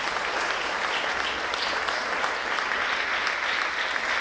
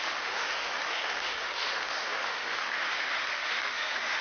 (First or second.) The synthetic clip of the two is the second